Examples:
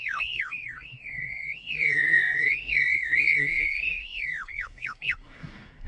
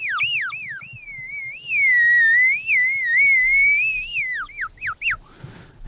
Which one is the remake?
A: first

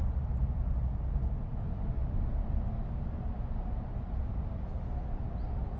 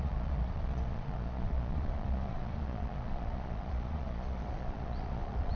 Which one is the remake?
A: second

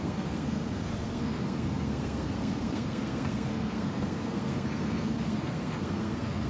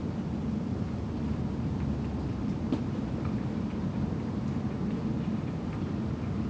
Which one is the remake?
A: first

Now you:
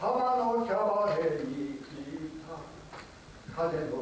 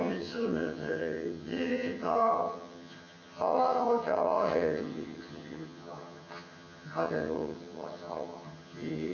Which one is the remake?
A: second